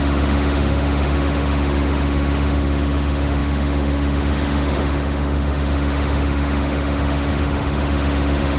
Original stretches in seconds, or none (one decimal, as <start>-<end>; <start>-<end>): none